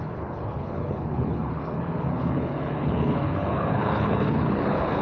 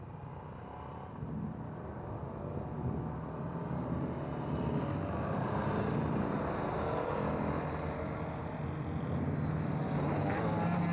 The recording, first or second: second